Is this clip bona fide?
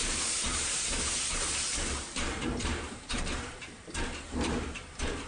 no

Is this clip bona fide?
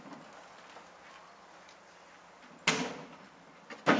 yes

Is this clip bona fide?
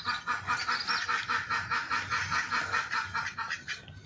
yes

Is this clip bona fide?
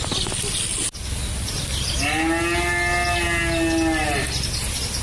yes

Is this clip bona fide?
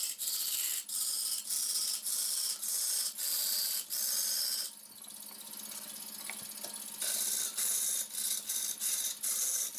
yes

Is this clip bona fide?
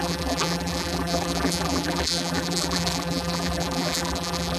no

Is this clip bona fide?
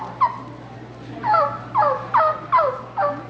no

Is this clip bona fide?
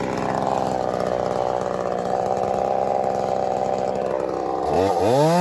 yes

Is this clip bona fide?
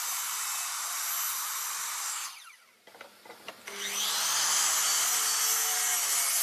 yes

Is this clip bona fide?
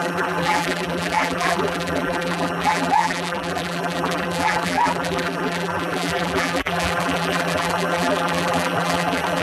no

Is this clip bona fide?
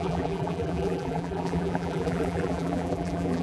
no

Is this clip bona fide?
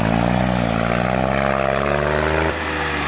yes